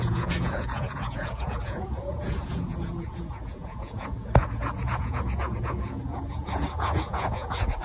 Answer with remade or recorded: remade